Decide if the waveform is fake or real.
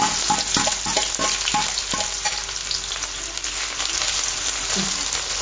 real